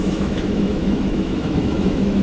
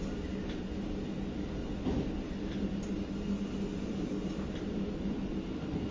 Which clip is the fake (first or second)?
first